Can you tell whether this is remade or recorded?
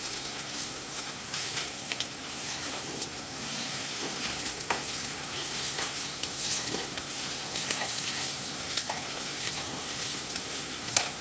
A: remade